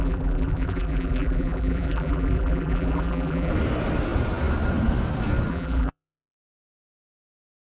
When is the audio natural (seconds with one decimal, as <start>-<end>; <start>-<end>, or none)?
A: 3.5-5.5